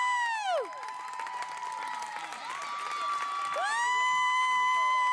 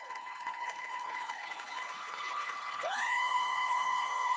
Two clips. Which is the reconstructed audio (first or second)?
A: second